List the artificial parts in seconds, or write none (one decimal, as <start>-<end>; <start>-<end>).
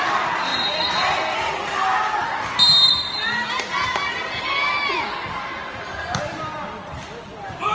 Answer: none